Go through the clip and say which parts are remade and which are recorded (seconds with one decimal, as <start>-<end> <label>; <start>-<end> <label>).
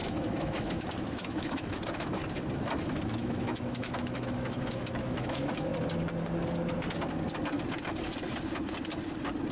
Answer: 0.0-2.2 remade; 2.2-2.8 recorded; 2.8-5.7 remade; 5.7-9.5 recorded